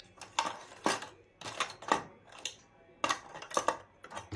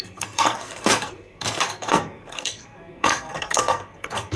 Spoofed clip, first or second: second